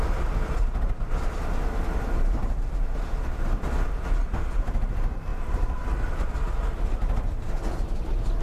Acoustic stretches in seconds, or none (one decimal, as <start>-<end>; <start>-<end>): 2.4-4.7